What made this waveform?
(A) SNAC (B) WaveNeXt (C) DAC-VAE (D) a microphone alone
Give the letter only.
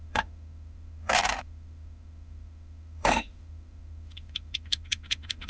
C